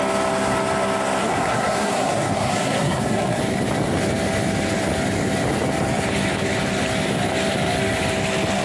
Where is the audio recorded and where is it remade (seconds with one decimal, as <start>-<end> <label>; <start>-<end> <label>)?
0.0-1.2 recorded; 1.2-3.4 remade; 3.4-8.6 recorded